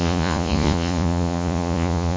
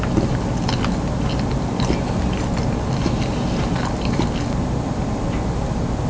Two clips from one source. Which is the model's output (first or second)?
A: first